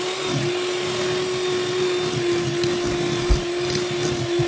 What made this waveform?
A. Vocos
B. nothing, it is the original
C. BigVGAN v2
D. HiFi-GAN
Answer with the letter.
B